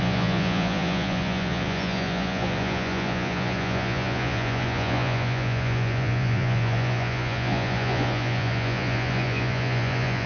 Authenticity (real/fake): fake